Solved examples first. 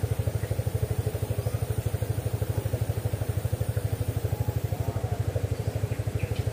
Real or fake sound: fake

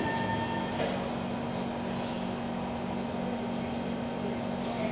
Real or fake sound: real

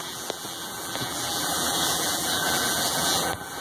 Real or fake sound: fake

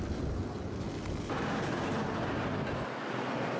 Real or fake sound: real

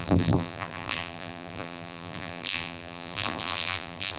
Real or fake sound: fake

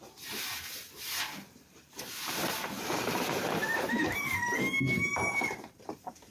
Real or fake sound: fake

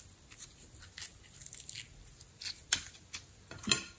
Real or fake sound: real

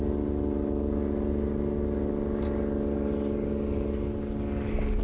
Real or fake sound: real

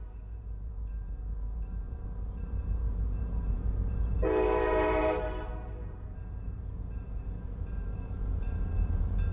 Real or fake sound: fake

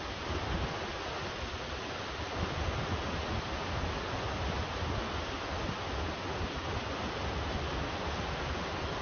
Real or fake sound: real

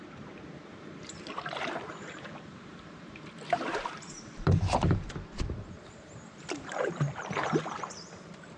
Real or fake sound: fake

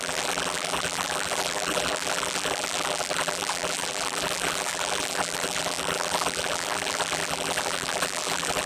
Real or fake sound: fake